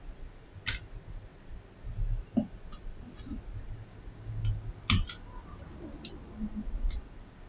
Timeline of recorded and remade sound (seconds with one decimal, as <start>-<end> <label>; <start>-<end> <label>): 0.0-7.5 recorded